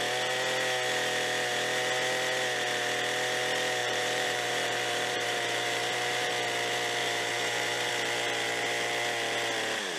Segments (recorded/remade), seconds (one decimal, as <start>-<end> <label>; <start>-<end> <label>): 0.0-3.8 recorded; 3.8-6.3 remade; 6.3-7.0 recorded; 7.0-7.9 remade; 7.9-10.0 recorded